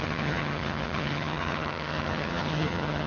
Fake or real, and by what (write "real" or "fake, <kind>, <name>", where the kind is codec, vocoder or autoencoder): fake, vocoder, HiFi-GAN